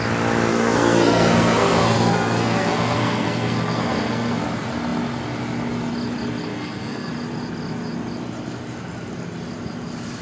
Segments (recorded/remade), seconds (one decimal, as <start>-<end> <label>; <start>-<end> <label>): 0.0-0.5 recorded; 0.5-4.4 remade; 4.4-6.5 recorded; 6.5-7.1 remade; 7.1-10.2 recorded

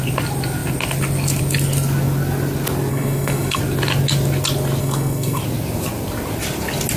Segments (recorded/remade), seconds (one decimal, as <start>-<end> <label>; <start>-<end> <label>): 0.0-2.9 recorded; 2.9-3.6 remade; 3.6-4.8 recorded; 4.8-5.4 remade; 5.4-7.0 recorded

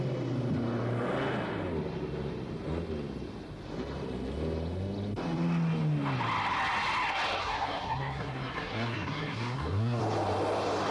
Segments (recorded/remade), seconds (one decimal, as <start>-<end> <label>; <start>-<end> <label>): 0.0-7.4 recorded; 7.4-10.0 remade; 10.0-10.9 recorded